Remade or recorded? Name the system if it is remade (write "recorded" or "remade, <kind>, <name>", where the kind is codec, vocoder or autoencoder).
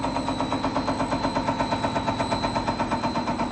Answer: recorded